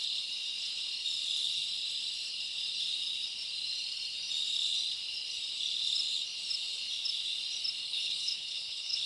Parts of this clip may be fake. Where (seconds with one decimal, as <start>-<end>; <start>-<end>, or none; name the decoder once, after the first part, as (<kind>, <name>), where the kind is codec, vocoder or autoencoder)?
7.8-9.1 (codec, HILCodec)